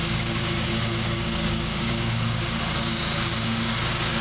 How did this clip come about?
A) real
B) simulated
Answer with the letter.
B